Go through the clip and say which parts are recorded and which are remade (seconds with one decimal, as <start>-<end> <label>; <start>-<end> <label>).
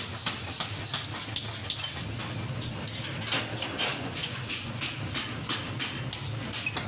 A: 0.0-3.9 recorded; 3.9-4.8 remade; 4.8-6.9 recorded